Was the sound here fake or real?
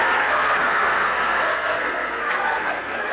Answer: fake